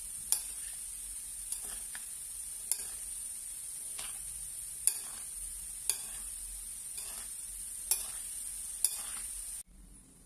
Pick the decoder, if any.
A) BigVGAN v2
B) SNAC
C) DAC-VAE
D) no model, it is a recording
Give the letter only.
D